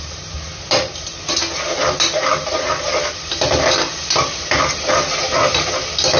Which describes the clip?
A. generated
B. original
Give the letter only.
B